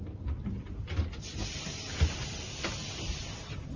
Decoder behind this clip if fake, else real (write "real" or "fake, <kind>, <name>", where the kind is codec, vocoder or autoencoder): real